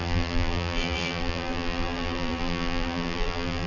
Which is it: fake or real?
fake